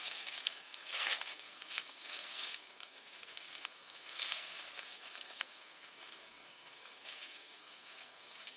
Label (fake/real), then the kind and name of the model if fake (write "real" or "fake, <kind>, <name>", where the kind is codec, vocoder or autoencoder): fake, codec, SNAC